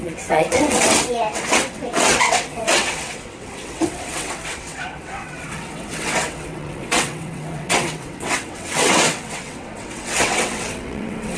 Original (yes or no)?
no